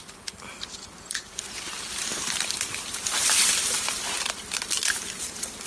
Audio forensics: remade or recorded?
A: remade